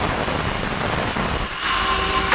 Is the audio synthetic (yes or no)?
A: no